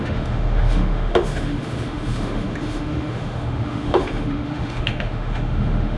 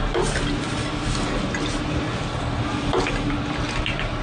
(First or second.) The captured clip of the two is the second